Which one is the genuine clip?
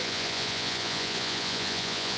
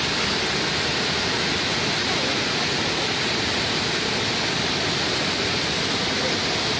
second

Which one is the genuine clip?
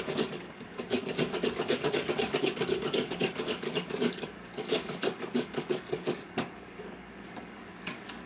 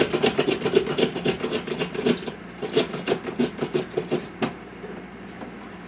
second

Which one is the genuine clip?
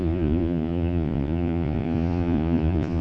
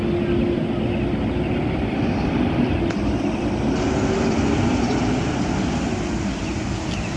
second